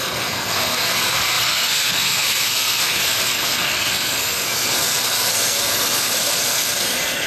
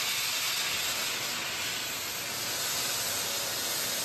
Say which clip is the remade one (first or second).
first